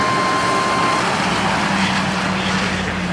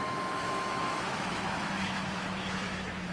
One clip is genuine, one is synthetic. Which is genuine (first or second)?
first